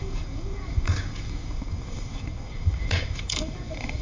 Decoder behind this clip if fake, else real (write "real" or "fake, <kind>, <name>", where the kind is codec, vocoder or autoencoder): fake, codec, DAC